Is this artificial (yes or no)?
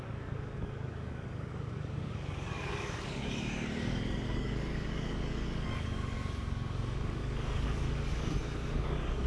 yes